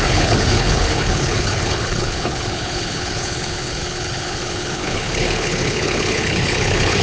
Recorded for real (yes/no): no